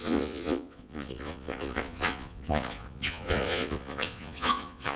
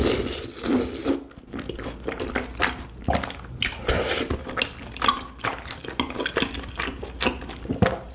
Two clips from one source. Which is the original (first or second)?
second